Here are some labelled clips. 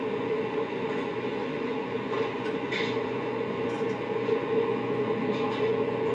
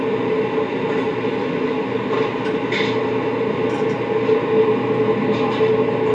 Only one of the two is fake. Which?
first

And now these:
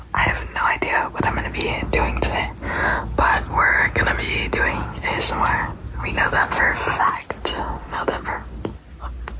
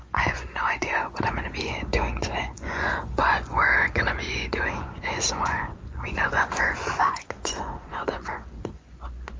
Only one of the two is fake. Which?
second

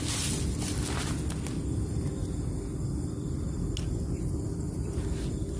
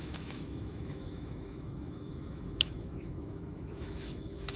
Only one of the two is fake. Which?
second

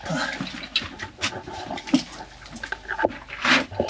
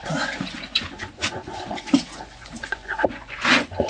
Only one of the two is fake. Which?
second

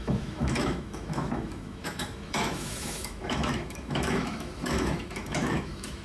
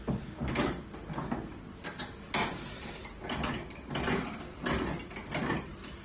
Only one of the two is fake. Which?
first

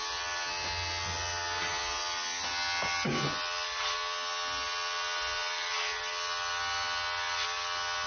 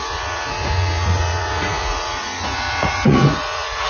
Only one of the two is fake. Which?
second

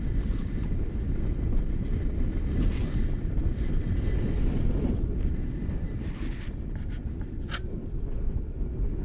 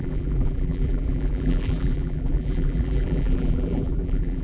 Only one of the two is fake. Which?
second